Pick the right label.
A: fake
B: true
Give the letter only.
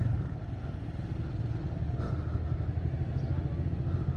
B